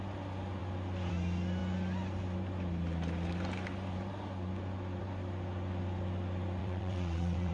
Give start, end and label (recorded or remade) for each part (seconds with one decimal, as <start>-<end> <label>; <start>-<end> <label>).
0.0-6.6 recorded; 6.6-7.5 remade